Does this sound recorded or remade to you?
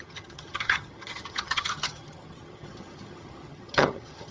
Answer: remade